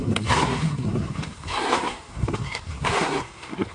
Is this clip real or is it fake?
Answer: fake